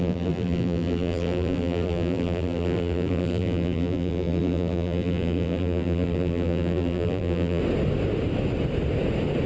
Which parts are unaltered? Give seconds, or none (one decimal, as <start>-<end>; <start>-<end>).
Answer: 7.6-9.5